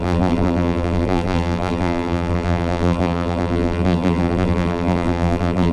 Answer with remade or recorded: remade